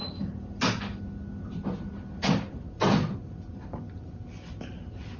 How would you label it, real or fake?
real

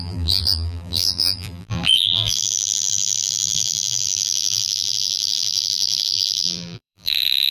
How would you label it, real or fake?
fake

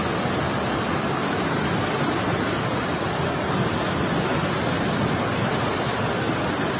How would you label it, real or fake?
real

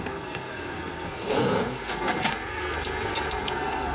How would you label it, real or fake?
fake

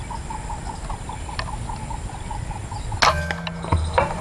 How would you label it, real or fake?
real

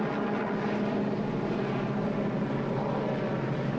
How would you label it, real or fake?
real